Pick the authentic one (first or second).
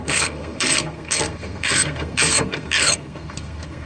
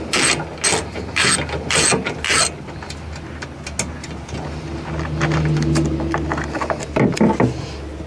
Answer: second